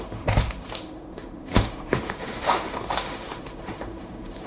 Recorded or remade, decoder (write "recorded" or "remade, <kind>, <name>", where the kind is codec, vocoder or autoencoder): remade, autoencoder, DAC-VAE